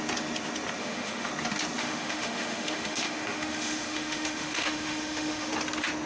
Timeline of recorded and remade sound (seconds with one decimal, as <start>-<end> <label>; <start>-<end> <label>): 0.0-0.8 recorded; 0.8-1.3 remade; 1.3-1.8 recorded; 1.8-5.5 remade; 5.5-6.1 recorded